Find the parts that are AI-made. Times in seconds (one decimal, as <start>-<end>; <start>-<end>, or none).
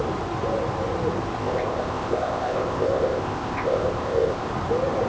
1.4-4.5